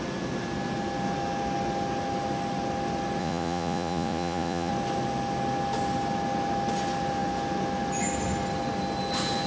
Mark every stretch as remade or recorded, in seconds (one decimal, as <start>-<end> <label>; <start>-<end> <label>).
0.0-3.2 recorded; 3.2-4.7 remade; 4.7-9.5 recorded